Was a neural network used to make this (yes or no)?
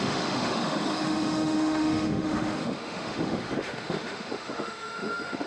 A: yes